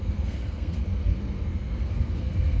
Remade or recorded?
remade